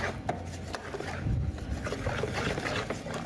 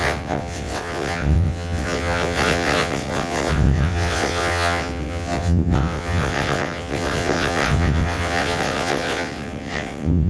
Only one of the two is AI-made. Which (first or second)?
second